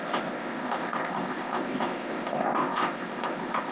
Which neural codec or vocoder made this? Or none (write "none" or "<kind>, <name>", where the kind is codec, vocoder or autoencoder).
codec, ZipCodec